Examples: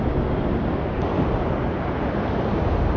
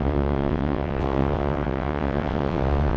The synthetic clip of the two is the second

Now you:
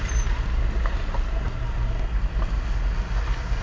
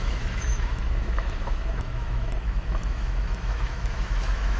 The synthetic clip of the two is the second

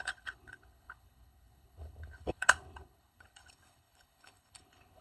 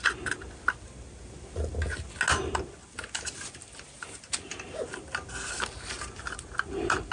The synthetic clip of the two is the first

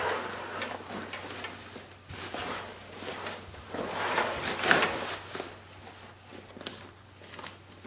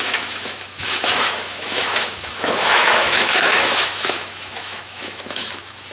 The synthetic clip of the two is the second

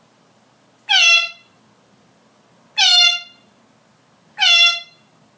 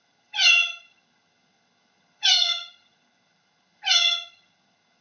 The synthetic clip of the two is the second